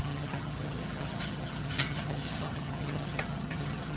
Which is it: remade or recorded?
remade